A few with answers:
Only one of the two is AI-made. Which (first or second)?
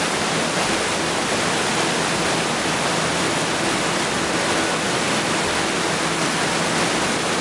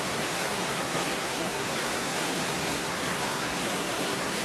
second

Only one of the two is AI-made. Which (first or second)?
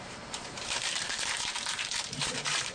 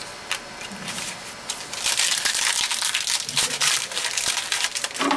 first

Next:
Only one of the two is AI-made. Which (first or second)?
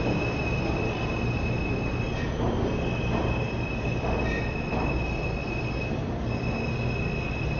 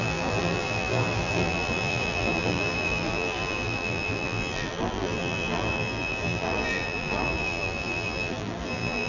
second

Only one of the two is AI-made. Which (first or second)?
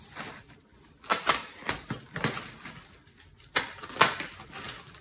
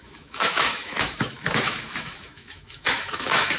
second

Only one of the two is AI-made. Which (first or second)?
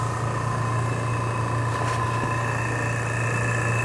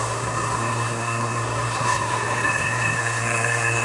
second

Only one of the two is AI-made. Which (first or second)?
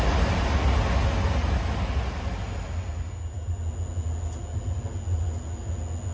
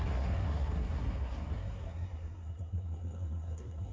second